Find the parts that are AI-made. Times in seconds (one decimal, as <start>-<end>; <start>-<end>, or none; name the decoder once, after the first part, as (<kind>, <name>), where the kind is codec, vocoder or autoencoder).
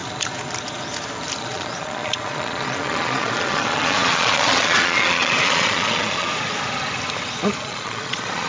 1.4-6.3 (vocoder, Vocos); 7.6-8.5